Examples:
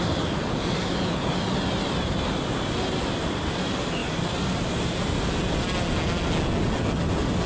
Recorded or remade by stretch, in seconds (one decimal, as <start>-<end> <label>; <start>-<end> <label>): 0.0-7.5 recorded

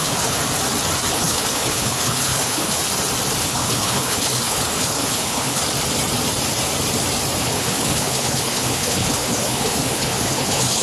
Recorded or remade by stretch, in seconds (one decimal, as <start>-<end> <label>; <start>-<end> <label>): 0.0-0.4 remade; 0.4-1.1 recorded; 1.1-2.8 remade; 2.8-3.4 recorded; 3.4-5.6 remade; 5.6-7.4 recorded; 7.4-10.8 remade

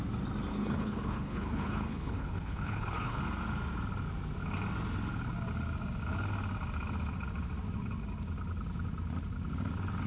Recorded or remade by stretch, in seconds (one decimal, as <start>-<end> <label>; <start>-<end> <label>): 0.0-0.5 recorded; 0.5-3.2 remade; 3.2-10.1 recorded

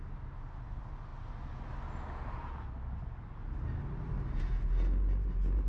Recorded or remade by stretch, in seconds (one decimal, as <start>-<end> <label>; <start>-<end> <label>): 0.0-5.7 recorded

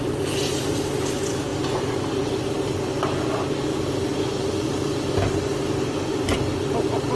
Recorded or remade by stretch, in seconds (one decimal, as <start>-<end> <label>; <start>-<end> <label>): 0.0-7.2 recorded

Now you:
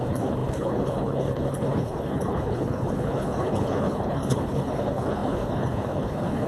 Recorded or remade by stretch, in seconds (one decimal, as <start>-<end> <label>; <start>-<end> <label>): 0.0-6.5 remade

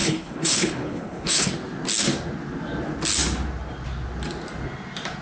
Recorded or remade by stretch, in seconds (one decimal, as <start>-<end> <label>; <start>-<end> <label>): 0.0-1.5 remade; 1.5-5.2 recorded